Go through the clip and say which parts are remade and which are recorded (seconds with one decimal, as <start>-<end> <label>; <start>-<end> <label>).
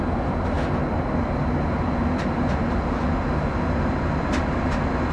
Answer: 0.0-5.1 recorded